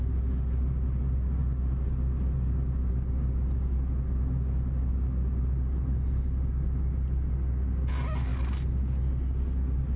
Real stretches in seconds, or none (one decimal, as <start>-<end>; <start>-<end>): 0.0-10.0